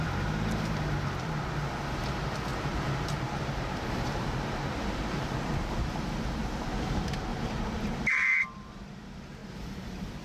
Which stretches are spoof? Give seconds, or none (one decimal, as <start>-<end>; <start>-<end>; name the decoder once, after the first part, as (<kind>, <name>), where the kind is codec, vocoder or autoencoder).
2.5-5.1 (vocoder, BigVGAN v2); 7.3-8.7; 9.4-10.2